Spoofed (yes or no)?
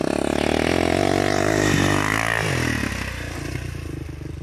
no